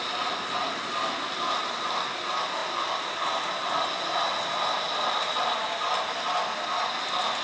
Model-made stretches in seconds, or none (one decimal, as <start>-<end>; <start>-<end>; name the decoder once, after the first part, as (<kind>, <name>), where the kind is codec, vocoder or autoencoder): 2.6-3.2 (vocoder, BigVGAN v2)